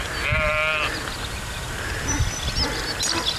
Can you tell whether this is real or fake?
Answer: real